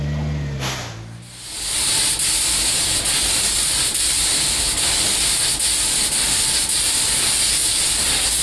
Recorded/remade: recorded